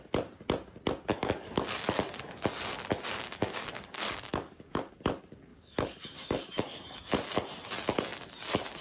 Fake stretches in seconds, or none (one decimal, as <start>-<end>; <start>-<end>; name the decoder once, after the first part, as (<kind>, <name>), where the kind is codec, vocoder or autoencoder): 1.1-2.2 (codec, DAC); 3.1-4.9; 5.5-7.1